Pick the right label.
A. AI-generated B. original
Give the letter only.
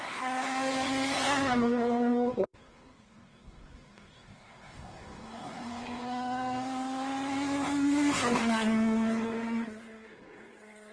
A